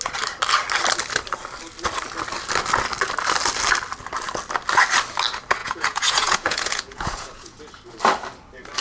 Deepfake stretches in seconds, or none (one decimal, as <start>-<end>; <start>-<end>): 5.6-7.6